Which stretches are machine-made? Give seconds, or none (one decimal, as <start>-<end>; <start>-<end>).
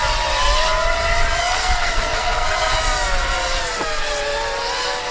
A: 1.4-2.8